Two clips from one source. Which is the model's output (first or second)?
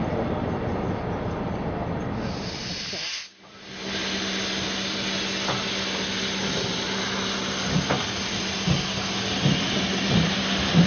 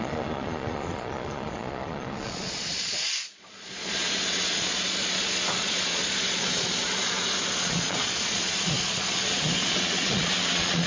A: second